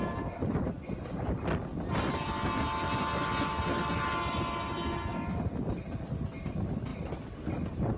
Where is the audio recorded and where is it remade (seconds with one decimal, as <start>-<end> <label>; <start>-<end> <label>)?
0.0-8.0 recorded